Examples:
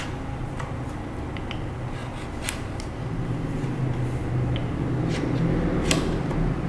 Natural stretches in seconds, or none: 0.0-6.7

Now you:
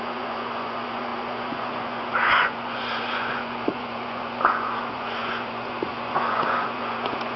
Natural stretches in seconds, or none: none

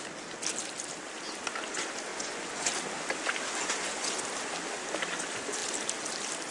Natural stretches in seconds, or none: 0.0-2.1; 2.7-3.6; 4.2-6.5

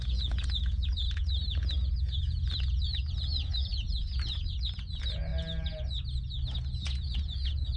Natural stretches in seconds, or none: 5.3-6.6